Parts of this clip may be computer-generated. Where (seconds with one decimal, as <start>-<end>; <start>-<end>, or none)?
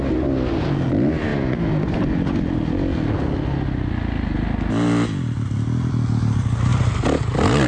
none